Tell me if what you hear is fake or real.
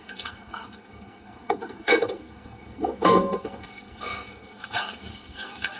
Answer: fake